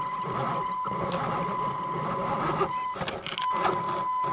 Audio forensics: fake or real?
real